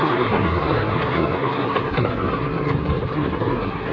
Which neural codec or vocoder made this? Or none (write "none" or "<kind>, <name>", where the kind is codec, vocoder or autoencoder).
codec, SNAC